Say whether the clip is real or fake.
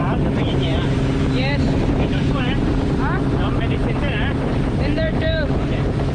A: fake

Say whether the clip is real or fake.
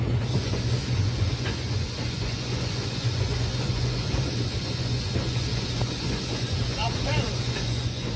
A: fake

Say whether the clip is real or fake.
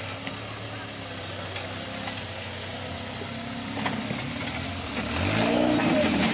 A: real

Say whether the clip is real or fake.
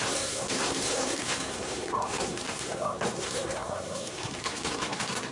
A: fake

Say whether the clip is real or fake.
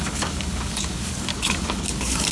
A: fake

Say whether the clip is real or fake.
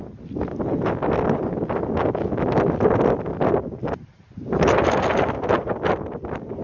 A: real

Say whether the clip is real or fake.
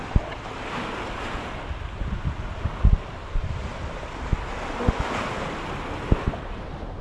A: real